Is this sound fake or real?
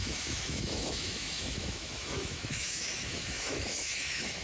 fake